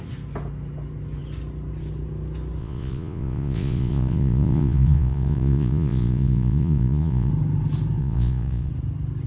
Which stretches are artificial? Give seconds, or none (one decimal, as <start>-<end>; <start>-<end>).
2.6-7.3; 8.0-8.7